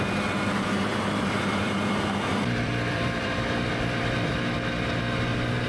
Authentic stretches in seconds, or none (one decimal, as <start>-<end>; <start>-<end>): 0.0-0.9; 4.3-5.7